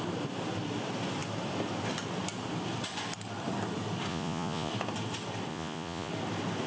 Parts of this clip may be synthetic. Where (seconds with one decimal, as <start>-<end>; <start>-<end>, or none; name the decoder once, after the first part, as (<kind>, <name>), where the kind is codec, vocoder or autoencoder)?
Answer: 4.1-4.7 (vocoder, Vocos); 5.5-6.1

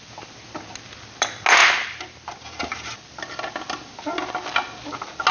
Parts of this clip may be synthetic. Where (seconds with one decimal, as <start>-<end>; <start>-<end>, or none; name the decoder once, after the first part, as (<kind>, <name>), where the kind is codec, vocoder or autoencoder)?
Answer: none

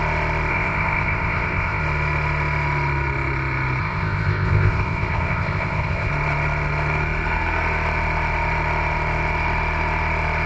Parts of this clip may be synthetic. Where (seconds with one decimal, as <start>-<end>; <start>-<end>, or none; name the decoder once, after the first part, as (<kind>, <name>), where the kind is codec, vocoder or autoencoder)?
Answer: 0.5-1.8 (codec, ZipCodec); 3.8-6.1

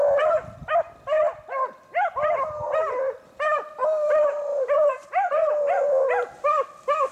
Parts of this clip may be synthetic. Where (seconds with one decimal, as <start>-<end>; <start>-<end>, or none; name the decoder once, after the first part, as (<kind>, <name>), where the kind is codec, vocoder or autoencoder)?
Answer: 3.8-5.5 (vocoder, BigVGAN v2)

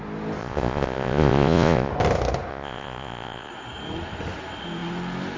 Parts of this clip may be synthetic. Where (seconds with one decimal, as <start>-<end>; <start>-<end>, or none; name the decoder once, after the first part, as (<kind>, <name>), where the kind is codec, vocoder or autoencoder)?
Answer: 0.4-1.9 (vocoder, Vocos); 2.5-3.5

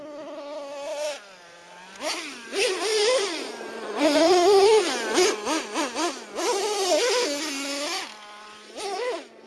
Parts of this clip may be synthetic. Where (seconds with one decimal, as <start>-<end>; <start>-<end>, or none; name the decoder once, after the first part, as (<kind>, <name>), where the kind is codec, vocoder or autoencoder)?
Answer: 2.9-4.8 (vocoder, BigVGAN v2)